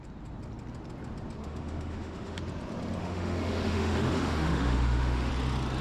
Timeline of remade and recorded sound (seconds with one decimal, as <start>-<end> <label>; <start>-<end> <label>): 0.0-1.4 recorded; 1.4-2.4 remade; 2.4-3.0 recorded; 3.0-5.3 remade; 5.3-5.8 recorded